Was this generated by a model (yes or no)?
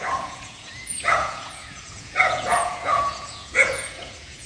yes